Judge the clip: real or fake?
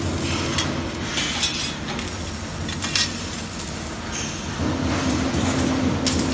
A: real